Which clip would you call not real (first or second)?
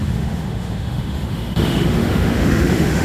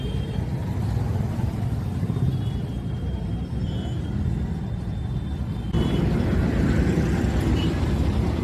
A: first